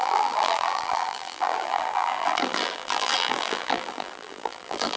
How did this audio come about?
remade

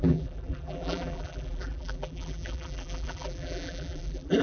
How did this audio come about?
remade